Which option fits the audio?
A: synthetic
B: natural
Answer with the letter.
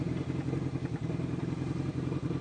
A